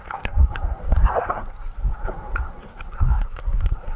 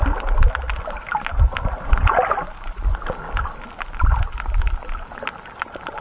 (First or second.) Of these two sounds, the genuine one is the second